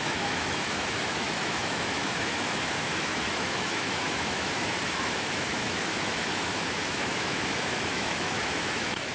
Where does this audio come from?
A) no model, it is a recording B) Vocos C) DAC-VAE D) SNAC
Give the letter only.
C